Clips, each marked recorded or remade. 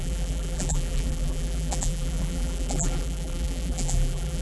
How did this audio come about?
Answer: remade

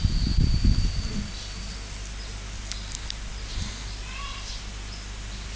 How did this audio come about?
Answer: recorded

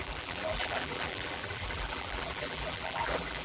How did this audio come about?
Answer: remade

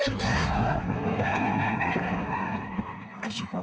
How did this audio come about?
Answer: remade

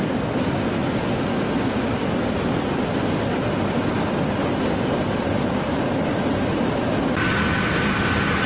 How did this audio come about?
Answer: recorded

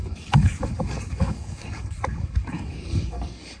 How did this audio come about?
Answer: remade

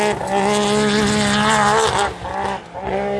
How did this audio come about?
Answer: recorded